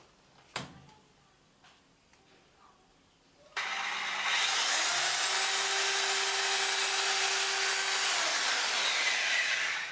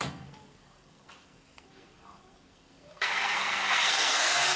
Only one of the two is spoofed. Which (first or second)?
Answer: second